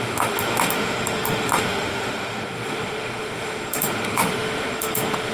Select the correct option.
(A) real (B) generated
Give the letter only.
B